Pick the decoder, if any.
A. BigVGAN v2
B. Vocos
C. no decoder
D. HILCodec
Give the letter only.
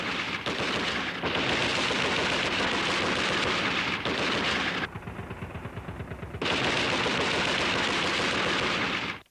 C